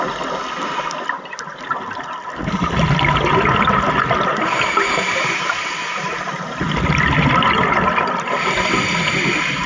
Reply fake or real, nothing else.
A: real